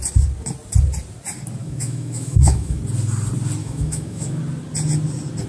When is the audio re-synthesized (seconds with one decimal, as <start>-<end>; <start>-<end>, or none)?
1.6-2.8; 3.6-4.4

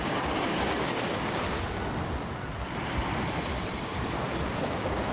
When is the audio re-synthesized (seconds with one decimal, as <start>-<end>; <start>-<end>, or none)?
0.0-1.8; 4.6-5.1

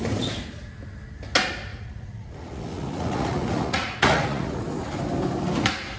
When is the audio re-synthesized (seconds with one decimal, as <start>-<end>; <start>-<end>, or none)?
1.7-4.6

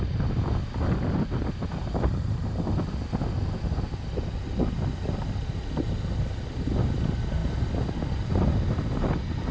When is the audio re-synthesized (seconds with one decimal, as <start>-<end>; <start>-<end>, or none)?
none